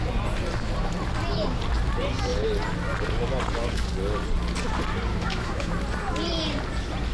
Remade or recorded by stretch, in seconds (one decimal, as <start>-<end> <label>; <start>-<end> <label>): 0.0-5.1 recorded; 5.1-5.7 remade; 5.7-7.1 recorded